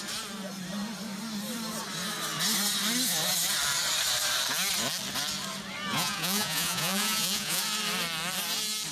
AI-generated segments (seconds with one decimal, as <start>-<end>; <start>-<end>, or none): 5.9-7.6